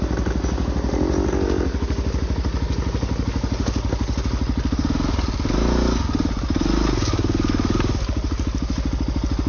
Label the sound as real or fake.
real